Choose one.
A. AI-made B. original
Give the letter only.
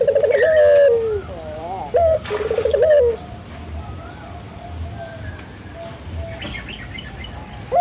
B